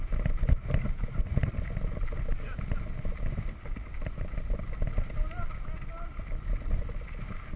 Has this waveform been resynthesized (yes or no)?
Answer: no